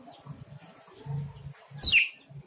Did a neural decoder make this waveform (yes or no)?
no